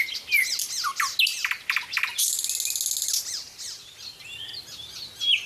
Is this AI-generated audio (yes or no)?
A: no